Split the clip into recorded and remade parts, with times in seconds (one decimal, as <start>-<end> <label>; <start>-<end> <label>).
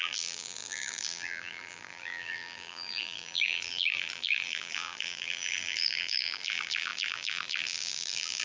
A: 0.0-8.4 remade